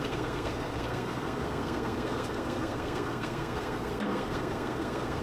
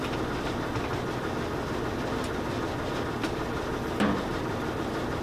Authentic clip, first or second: second